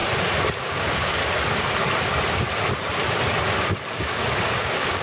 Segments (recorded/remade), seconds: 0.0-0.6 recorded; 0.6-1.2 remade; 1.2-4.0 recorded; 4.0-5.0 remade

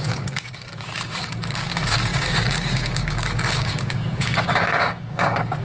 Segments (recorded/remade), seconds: 0.0-5.6 remade